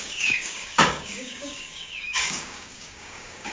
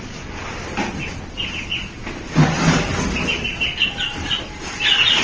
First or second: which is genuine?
second